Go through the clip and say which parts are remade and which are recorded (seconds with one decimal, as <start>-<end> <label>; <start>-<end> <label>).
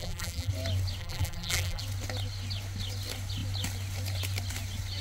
0.0-0.5 remade; 0.5-1.0 recorded; 1.0-1.8 remade; 1.8-5.0 recorded